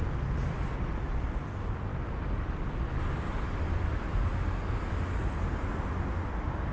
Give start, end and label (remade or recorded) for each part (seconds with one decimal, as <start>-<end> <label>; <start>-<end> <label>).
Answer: 0.0-6.7 recorded